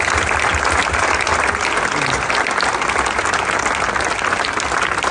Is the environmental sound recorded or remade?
recorded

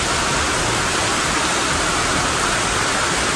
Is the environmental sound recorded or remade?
recorded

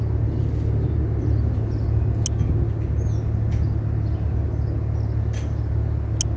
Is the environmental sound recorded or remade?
recorded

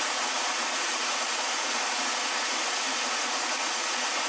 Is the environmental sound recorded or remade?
remade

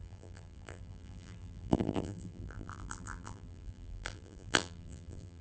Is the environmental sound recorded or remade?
remade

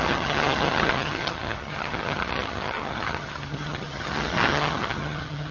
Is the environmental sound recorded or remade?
remade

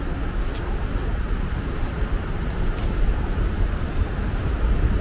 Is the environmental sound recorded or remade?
recorded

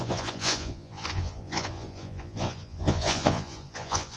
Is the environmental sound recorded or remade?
remade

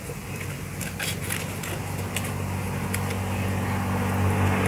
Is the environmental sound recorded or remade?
recorded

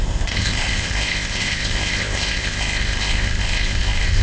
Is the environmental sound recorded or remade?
remade